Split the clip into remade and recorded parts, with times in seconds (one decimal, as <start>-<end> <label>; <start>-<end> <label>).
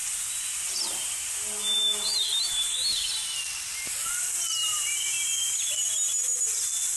0.0-3.4 remade; 3.4-4.6 recorded; 4.6-5.5 remade; 5.5-7.0 recorded